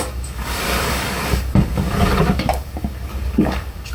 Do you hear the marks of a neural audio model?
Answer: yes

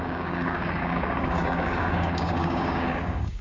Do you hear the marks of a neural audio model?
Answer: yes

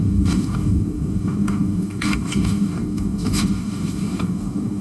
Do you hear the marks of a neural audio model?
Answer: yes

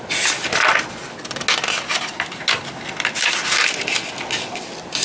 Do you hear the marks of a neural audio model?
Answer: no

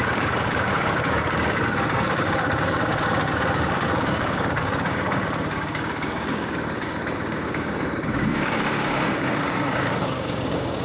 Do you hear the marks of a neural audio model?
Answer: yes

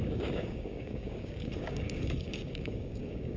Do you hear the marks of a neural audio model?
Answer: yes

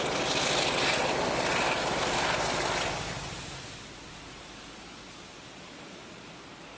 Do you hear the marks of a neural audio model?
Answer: no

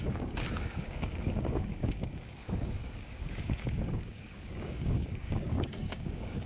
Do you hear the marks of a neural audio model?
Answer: yes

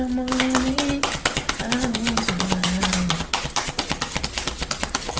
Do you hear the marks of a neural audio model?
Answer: no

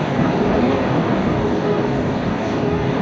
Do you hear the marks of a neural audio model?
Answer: yes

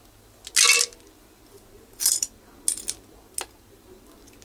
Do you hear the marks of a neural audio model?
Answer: no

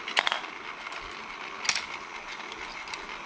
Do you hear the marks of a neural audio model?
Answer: no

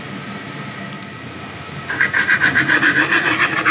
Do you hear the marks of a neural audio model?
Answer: no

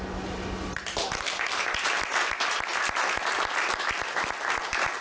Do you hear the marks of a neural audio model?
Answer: no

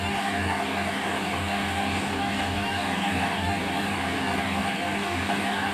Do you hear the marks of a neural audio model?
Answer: yes